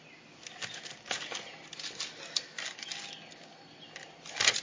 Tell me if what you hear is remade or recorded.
recorded